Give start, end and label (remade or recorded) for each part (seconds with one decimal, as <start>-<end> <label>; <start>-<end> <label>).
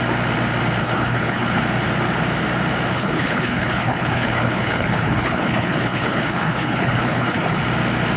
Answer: 0.0-0.8 recorded; 0.8-1.6 remade; 1.6-2.9 recorded; 2.9-7.6 remade; 7.6-8.2 recorded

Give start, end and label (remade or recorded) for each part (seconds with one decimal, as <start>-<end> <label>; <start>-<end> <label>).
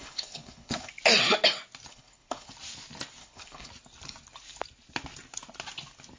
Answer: 0.0-0.9 remade; 0.9-1.9 recorded; 1.9-2.5 remade; 2.5-3.2 recorded; 3.2-3.7 remade; 3.7-6.2 recorded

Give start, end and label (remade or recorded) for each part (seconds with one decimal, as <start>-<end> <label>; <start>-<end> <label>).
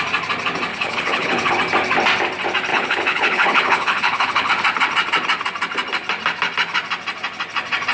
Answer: 0.0-0.7 recorded; 0.7-1.5 remade; 1.5-2.7 recorded; 2.7-4.5 remade; 4.5-7.9 recorded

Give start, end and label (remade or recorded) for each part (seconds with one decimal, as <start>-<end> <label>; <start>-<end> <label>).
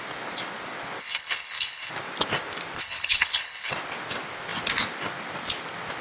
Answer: 0.0-1.0 recorded; 1.0-1.9 remade; 1.9-2.8 recorded; 2.8-3.7 remade; 3.7-6.0 recorded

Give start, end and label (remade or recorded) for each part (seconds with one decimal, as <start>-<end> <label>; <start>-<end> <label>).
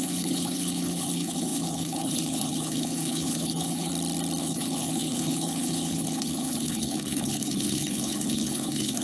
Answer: 0.0-3.9 remade; 3.9-4.4 recorded; 4.4-9.0 remade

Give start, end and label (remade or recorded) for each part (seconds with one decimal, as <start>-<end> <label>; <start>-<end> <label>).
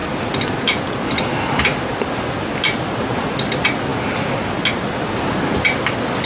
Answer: 0.0-6.3 recorded